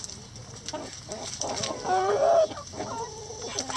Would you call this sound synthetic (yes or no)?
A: no